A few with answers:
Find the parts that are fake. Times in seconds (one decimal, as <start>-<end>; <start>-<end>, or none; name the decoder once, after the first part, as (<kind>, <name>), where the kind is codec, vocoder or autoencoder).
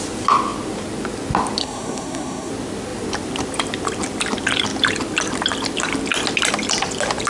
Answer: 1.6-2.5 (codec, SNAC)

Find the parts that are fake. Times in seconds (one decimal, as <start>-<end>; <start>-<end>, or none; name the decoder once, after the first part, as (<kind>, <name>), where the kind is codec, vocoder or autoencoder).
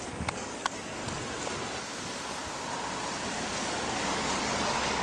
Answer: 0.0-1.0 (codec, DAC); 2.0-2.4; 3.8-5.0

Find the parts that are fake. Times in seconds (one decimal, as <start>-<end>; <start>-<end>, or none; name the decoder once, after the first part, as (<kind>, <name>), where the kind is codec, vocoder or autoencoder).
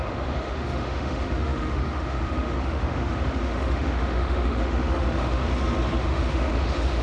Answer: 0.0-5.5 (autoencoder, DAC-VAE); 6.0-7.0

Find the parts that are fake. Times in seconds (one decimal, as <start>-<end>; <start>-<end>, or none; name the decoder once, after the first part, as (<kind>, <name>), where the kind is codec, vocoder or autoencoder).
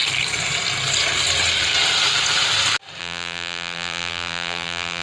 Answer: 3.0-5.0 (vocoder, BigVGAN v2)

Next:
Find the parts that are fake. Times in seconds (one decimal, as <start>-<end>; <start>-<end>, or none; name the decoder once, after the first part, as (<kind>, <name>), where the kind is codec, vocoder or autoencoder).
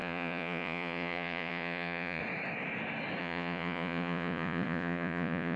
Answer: 0.0-2.2 (vocoder, Vocos); 3.2-5.6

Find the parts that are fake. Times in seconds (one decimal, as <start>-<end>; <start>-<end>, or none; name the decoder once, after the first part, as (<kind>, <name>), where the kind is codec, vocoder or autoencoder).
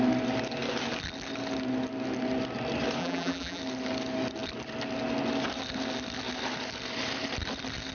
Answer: 3.0-3.6 (vocoder, BigVGAN v2)